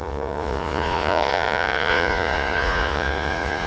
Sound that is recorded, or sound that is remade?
remade